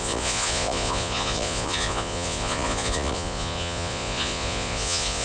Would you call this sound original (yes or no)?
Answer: no